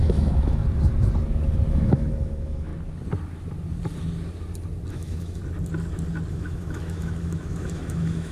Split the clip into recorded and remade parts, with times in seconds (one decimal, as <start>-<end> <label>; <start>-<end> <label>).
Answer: 0.0-0.6 remade; 0.6-1.7 recorded; 1.7-2.7 remade; 2.7-4.9 recorded; 4.9-5.4 remade; 5.4-6.3 recorded; 6.3-8.3 remade